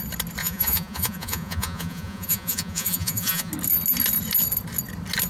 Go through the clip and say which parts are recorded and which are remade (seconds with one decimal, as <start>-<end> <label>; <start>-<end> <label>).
0.0-0.4 recorded; 0.4-3.5 remade; 3.5-5.3 recorded